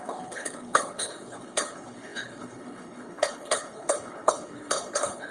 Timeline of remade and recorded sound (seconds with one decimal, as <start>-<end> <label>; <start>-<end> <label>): 0.0-5.3 remade